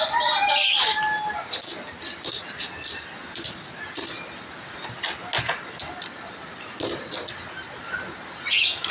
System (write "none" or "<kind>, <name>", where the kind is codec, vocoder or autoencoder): none